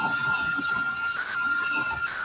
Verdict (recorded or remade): recorded